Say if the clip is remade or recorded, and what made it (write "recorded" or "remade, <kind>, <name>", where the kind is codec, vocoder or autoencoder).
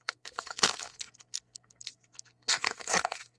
remade, codec, SNAC